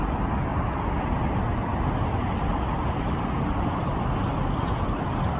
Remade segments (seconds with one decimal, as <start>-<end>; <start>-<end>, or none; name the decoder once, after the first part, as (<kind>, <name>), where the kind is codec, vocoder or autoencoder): none